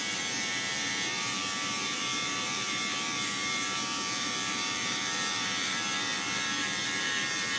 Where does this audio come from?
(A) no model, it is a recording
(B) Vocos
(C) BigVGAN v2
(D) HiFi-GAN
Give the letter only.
C